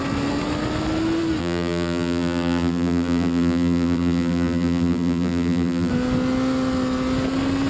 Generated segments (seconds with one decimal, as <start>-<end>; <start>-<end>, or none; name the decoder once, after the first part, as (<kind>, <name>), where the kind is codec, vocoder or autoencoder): 1.4-5.9 (vocoder, BigVGAN v2)